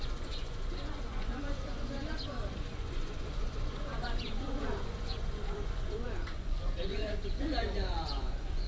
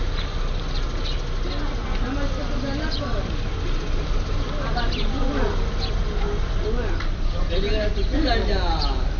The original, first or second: second